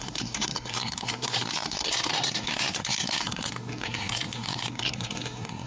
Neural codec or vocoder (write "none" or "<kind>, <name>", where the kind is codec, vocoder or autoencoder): codec, SNAC